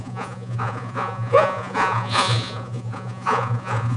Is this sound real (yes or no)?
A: no